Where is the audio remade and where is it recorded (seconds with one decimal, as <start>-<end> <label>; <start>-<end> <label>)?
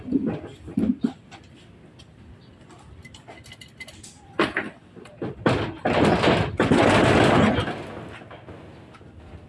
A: 0.0-9.5 recorded